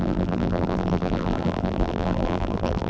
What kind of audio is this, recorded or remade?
remade